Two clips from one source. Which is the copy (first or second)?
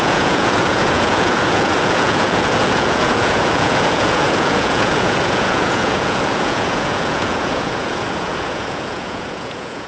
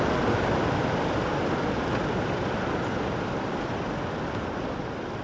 first